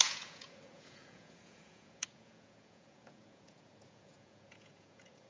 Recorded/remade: remade